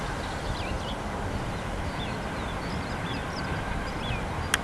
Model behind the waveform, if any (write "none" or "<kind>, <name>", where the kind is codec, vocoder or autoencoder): none